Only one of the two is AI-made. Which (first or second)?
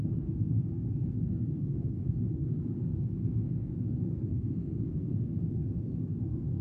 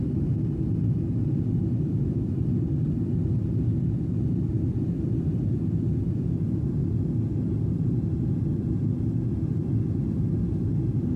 first